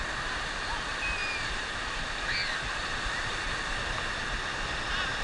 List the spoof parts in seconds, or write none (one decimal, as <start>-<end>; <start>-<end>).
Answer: none